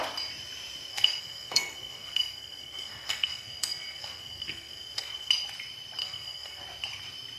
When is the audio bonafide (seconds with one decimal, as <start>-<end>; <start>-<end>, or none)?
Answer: 0.0-0.9; 5.3-6.0; 6.6-7.4